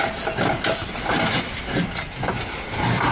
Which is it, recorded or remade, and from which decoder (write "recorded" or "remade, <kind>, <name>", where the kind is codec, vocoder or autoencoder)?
recorded